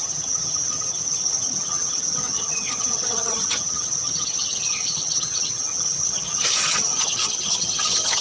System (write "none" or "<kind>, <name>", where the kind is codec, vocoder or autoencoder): vocoder, HiFi-GAN